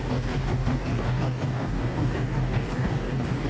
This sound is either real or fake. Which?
fake